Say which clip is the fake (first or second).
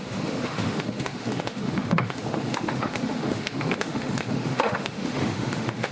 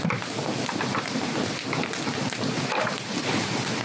first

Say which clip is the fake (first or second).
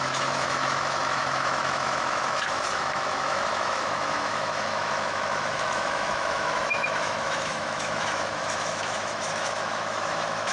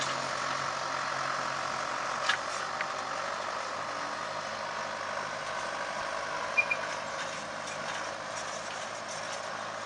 first